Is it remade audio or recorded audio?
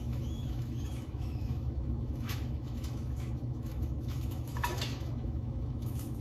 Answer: remade